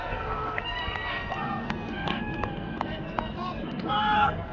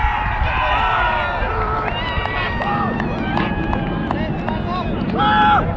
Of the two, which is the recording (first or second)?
second